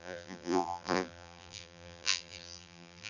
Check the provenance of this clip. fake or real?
fake